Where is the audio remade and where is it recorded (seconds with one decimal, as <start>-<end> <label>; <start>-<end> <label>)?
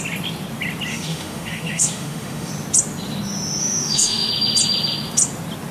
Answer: 0.0-0.9 recorded; 0.9-2.5 remade; 2.5-3.6 recorded; 3.6-4.3 remade; 4.3-5.7 recorded